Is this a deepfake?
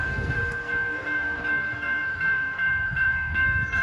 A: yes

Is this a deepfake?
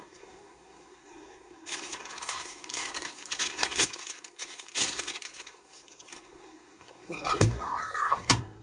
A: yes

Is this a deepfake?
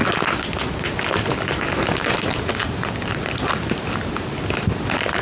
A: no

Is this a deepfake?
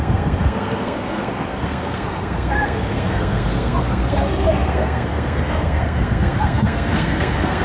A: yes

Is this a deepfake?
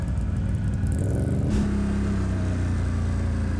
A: no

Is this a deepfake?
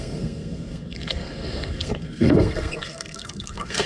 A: yes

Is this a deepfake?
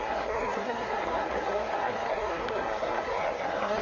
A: yes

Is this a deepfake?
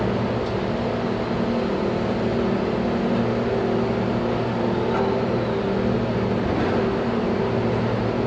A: no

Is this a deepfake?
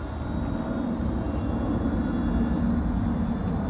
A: no